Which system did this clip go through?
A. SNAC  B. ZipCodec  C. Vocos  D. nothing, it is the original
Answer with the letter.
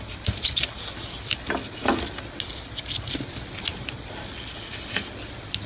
D